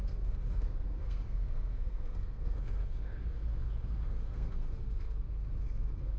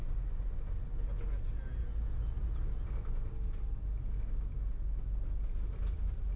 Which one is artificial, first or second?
first